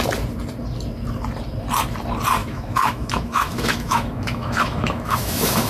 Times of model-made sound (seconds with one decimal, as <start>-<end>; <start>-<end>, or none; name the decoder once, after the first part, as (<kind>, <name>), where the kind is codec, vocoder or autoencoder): 2.4-5.7 (autoencoder, DAC-VAE)